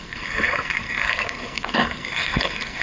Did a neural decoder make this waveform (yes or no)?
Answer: yes